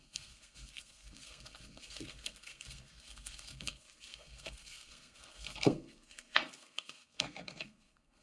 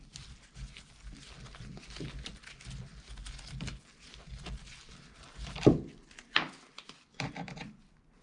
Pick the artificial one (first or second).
first